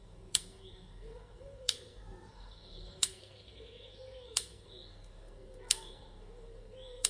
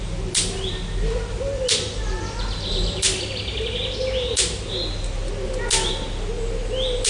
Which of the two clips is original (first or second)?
second